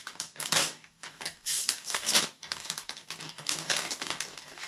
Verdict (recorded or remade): remade